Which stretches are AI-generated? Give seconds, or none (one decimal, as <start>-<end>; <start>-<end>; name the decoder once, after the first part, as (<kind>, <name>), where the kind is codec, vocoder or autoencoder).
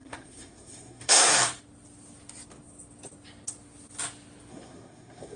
0.0-1.3 (codec, SNAC); 4.5-5.4